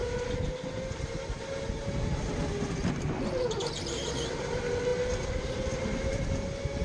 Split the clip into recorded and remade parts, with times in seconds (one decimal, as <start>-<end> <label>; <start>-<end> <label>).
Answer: 0.0-6.8 recorded